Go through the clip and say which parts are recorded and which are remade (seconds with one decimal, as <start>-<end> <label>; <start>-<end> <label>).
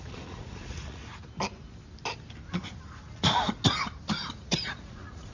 0.0-1.1 remade; 1.1-4.3 recorded; 4.3-5.3 remade